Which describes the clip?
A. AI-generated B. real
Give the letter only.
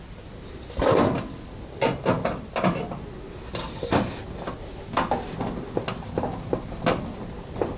B